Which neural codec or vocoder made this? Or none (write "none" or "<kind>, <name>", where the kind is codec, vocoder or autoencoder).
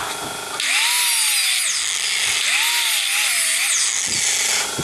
none